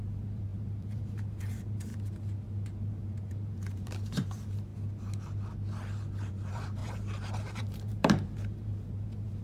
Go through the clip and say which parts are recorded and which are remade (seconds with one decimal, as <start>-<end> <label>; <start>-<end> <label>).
0.0-1.9 remade; 1.9-2.9 recorded; 2.9-4.7 remade; 4.7-6.3 recorded; 6.3-9.4 remade